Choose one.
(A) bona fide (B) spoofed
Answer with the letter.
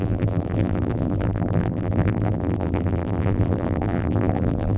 B